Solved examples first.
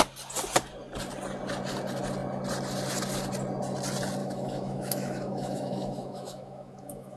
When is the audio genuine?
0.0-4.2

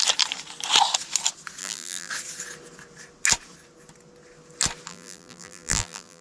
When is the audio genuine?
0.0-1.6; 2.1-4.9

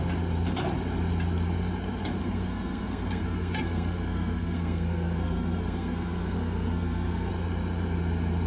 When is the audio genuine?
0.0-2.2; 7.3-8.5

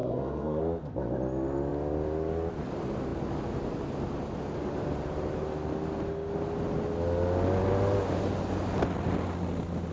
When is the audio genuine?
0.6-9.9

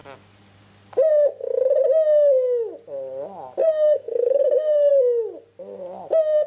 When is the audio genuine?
0.0-3.6; 4.9-6.5

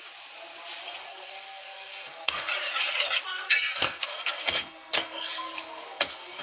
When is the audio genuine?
0.0-1.0; 2.5-3.3

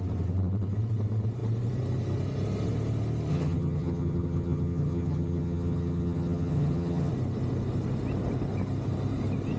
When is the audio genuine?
0.0-3.3; 7.1-9.6